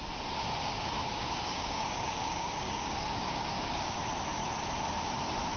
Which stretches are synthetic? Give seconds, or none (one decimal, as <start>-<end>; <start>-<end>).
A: 0.6-4.0